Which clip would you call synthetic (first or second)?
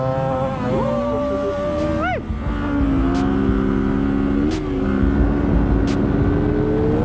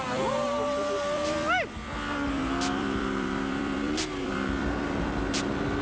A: second